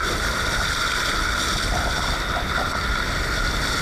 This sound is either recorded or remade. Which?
recorded